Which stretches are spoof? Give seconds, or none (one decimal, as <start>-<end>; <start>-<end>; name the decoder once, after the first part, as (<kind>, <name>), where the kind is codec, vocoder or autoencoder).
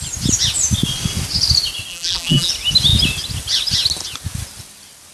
1.9-2.5 (vocoder, BigVGAN v2)